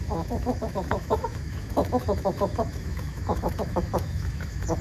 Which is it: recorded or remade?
remade